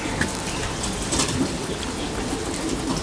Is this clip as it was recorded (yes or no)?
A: yes